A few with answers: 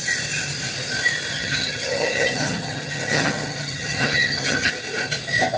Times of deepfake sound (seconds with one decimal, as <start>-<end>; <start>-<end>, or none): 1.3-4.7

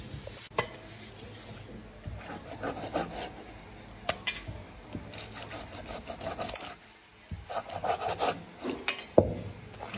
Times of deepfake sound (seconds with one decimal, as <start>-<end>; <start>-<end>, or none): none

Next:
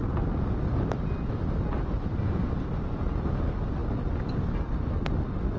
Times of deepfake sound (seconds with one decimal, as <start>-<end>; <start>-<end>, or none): none

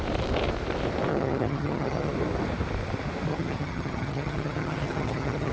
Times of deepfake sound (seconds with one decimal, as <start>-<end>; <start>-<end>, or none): 1.1-2.1; 3.3-5.5

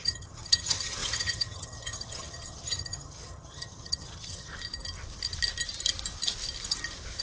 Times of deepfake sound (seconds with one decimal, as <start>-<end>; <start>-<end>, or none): 0.0-4.5